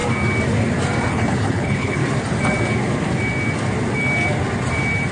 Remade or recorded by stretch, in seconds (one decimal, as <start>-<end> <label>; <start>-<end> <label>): 0.0-1.1 recorded; 1.1-2.0 remade; 2.0-5.1 recorded